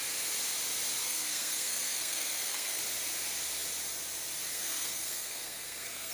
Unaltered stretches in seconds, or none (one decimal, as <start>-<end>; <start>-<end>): 0.0-1.0; 2.8-4.5